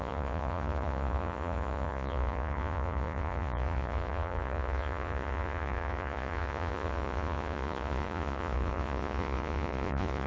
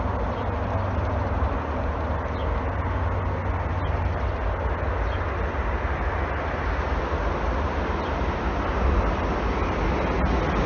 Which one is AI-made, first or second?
first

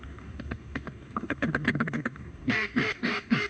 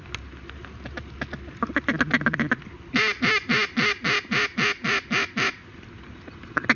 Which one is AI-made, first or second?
first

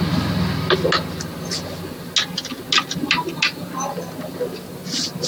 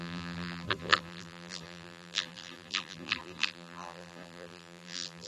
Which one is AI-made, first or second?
second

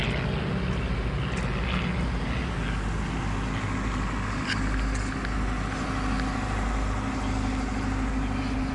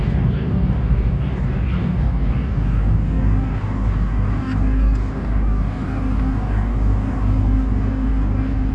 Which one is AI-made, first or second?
second